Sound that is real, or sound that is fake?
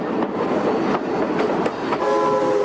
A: real